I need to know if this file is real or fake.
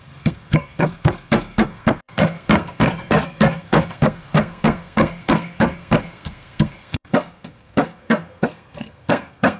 fake